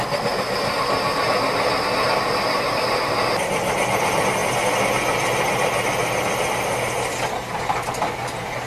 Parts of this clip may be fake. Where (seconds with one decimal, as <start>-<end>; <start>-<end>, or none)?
none